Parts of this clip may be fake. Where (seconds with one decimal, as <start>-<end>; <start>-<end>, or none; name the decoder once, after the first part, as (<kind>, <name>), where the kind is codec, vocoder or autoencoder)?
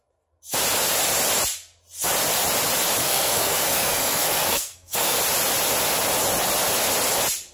3.0-5.2 (codec, SNAC)